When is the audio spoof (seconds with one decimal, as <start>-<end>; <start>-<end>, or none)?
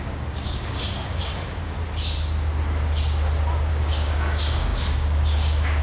0.0-1.3; 3.7-5.8